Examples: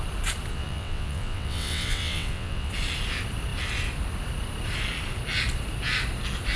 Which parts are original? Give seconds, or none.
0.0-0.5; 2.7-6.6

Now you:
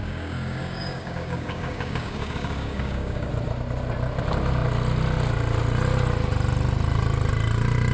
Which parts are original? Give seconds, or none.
3.3-7.9

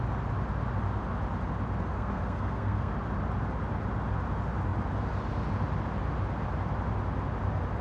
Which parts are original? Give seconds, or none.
0.0-1.9; 2.9-7.8